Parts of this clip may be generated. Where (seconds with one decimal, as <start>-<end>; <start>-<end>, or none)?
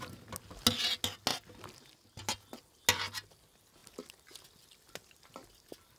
none